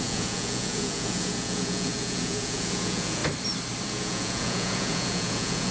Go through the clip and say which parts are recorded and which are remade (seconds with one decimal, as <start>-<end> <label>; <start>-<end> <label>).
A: 0.0-3.2 remade; 3.2-3.9 recorded; 3.9-5.7 remade